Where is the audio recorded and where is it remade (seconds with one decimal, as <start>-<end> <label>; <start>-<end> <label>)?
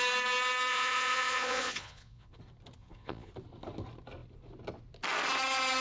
0.0-0.7 recorded; 0.7-2.4 remade; 2.4-2.8 recorded; 2.8-3.3 remade; 3.3-5.8 recorded